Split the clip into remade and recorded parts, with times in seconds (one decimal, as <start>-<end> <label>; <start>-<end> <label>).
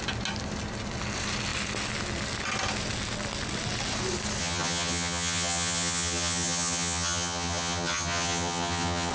0.0-4.4 recorded; 4.4-9.1 remade